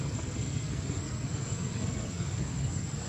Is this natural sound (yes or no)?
no